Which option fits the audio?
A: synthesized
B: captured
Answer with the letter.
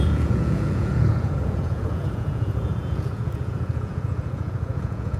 A